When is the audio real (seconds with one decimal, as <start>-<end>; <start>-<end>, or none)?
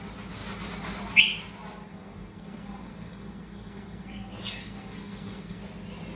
0.0-1.9; 5.6-6.2